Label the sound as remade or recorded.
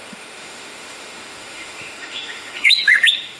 remade